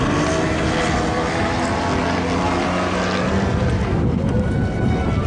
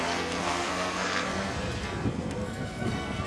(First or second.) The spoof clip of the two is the second